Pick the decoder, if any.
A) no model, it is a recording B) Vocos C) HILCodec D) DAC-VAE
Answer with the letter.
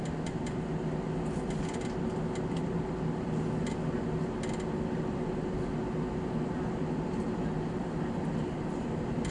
A